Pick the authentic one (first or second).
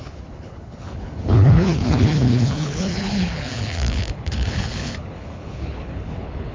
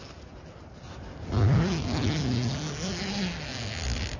second